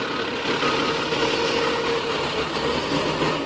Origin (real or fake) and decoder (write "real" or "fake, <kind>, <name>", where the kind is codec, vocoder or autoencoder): real